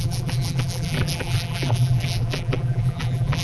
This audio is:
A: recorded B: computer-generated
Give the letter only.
B